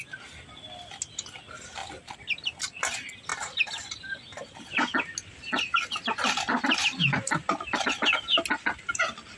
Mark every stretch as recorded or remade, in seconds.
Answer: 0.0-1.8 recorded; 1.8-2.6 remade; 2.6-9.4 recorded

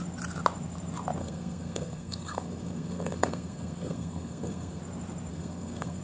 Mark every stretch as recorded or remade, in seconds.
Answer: 0.0-1.2 recorded; 1.2-4.8 remade; 4.8-5.3 recorded; 5.3-6.0 remade

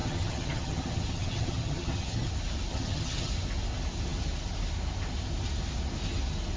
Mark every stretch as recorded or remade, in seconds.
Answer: 0.0-2.3 remade; 2.3-2.7 recorded; 2.7-3.3 remade; 3.3-6.6 recorded

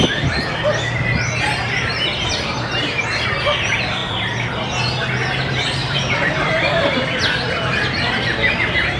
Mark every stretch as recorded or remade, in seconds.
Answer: 0.0-1.5 recorded; 1.5-3.0 remade; 3.0-5.8 recorded; 5.8-6.5 remade; 6.5-9.0 recorded

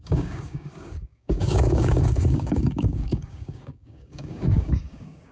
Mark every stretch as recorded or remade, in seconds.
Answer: 0.0-5.3 remade

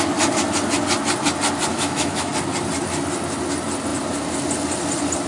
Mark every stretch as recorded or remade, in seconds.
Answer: 0.0-1.7 recorded; 1.7-2.3 remade; 2.3-5.3 recorded

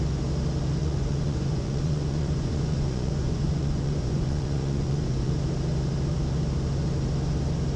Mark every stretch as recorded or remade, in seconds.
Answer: 0.0-0.8 recorded; 0.8-5.3 remade; 5.3-7.8 recorded